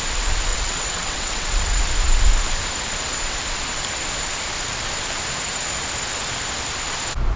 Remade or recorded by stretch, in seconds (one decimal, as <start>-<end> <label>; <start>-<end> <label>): 0.0-0.5 recorded; 0.5-1.8 remade; 1.8-7.4 recorded